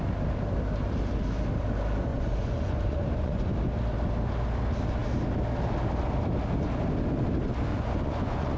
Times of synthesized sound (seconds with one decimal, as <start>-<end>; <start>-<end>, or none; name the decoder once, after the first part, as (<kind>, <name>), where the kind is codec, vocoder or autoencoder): 2.1-3.5 (vocoder, Vocos); 7.7-8.6